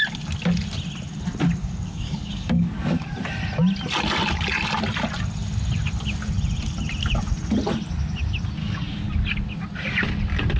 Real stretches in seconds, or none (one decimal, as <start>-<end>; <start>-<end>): 0.0-1.6; 3.1-8.6; 9.1-10.6